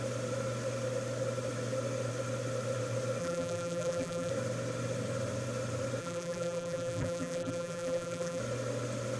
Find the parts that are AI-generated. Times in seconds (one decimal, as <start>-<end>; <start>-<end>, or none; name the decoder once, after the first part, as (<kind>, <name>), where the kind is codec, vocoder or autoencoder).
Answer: 3.2-4.3 (vocoder, BigVGAN v2); 6.0-8.4